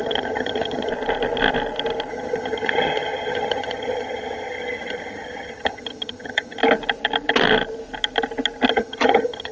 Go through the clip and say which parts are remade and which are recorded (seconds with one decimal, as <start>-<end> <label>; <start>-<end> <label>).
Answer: 0.0-0.9 remade; 0.9-2.1 recorded; 2.1-6.6 remade; 6.6-8.7 recorded; 8.7-9.5 remade